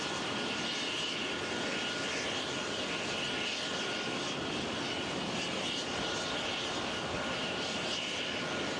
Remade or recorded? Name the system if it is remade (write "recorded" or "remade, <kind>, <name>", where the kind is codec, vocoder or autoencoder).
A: recorded